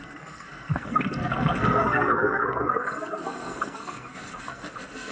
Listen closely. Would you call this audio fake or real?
fake